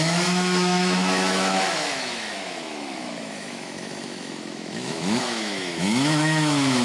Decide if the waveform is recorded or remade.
remade